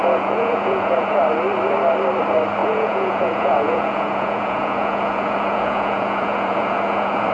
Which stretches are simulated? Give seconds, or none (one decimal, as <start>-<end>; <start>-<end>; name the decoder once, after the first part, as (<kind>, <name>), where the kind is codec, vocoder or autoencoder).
0.0-1.2 (vocoder, Vocos); 2.6-7.3